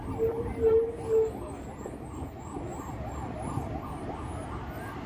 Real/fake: real